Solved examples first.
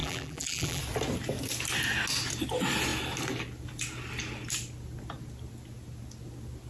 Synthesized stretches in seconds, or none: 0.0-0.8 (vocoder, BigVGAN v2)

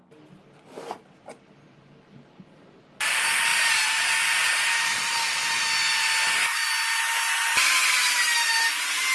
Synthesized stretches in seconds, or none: 3.5-5.6 (vocoder, BigVGAN v2); 7.4-8.1

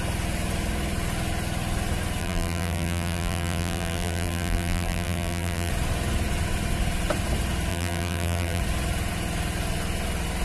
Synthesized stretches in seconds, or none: 2.2-5.7 (vocoder, BigVGAN v2); 7.7-8.6

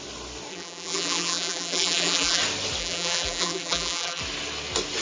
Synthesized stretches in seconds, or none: 0.5-2.4 (vocoder, BigVGAN v2); 2.8-4.2

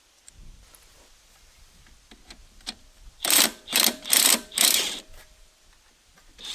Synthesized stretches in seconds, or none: 2.4-5.5 (vocoder, BigVGAN v2)

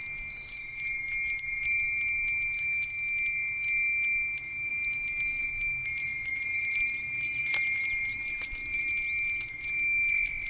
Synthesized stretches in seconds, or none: 0.0-0.6 (vocoder, BigVGAN v2); 4.7-5.5; 6.0-8.9

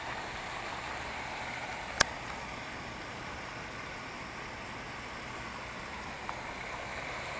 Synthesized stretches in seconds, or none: 1.7-6.1 (vocoder, BigVGAN v2); 6.9-7.4

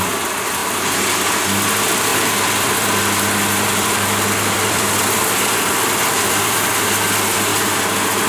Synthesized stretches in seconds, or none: 0.0-0.6 (vocoder, BigVGAN v2); 1.7-7.5